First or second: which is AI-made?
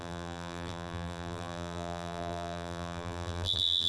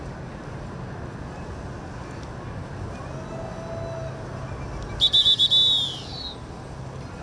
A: first